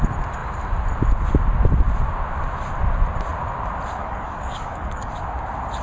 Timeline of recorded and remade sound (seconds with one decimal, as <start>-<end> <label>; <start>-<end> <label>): 0.0-4.0 recorded; 4.0-5.1 remade; 5.1-5.8 recorded